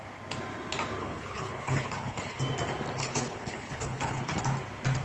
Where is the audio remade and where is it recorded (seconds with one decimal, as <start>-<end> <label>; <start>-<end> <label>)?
0.0-1.0 recorded; 1.0-2.4 remade; 2.4-3.0 recorded; 3.0-4.4 remade; 4.4-5.0 recorded